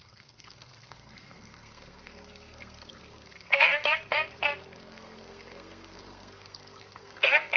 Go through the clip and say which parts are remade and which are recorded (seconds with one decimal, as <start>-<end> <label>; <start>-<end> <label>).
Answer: 0.0-7.6 remade